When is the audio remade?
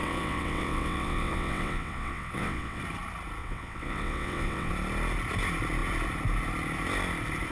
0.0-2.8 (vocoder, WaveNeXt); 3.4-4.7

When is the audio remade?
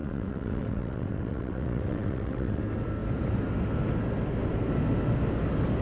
0.0-2.6 (vocoder, WaveNeXt)